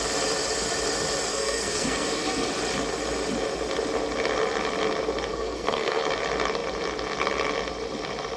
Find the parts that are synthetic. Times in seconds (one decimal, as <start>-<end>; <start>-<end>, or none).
1.3-2.5; 5.3-6.0